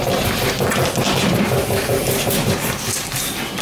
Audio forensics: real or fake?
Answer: real